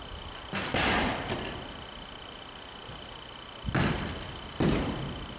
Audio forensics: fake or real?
real